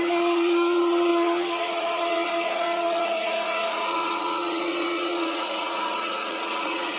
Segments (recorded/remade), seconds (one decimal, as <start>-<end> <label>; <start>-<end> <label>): 0.0-7.0 remade